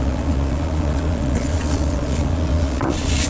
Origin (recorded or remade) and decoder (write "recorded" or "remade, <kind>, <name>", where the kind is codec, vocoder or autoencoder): remade, vocoder, Vocos